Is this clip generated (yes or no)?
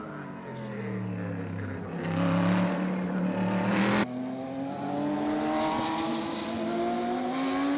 no